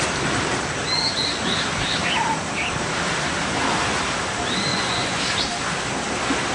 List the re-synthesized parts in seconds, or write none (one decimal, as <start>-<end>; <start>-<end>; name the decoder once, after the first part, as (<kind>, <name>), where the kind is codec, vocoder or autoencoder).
4.7-5.2 (vocoder, Vocos)